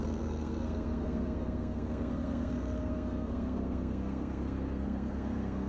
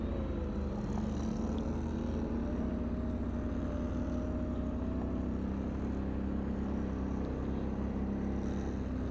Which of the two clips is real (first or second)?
second